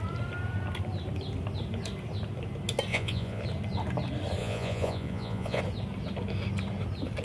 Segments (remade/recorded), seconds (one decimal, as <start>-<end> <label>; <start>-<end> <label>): 0.0-2.9 recorded; 2.9-3.4 remade; 3.4-4.4 recorded; 4.4-5.6 remade; 5.6-7.2 recorded